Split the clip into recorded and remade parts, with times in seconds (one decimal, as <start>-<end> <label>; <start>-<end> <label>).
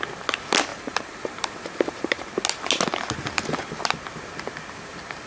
0.0-0.7 recorded; 0.7-2.3 remade; 2.3-5.3 recorded